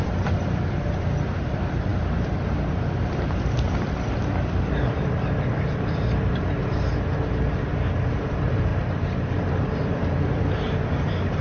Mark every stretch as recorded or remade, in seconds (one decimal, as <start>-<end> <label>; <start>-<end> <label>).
0.0-6.6 remade; 6.6-8.1 recorded; 8.1-11.4 remade